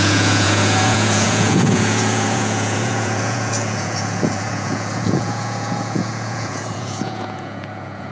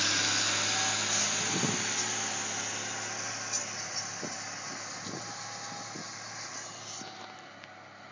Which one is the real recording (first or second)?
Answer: second